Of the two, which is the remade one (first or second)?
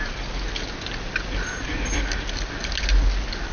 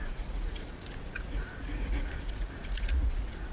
second